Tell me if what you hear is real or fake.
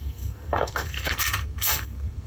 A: fake